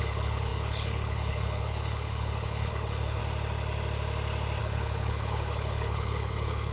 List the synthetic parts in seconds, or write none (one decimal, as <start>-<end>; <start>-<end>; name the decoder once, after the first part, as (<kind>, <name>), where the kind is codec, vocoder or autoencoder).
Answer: 0.0-3.2 (codec, HILCodec); 4.6-6.7